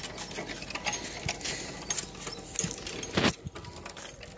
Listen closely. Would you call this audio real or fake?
real